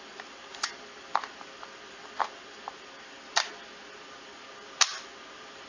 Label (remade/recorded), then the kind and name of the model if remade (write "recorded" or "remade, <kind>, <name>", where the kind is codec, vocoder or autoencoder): recorded